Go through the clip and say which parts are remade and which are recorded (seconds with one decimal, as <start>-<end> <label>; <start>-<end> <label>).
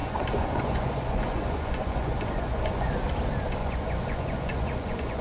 0.0-2.9 remade; 2.9-3.6 recorded; 3.6-5.2 remade